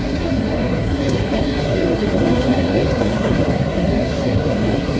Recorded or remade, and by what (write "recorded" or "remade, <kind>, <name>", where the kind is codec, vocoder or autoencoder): remade, codec, SNAC